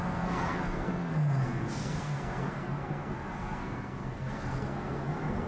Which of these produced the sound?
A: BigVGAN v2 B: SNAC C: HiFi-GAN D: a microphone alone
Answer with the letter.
B